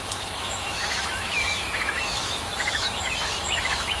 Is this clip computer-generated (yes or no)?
yes